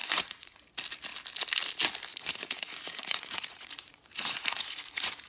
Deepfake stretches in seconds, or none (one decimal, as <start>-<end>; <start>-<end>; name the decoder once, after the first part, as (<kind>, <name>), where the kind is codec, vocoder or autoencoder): 0.0-0.6 (vocoder, Vocos); 2.1-5.3